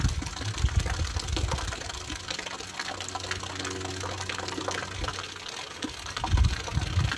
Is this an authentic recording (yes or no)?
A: yes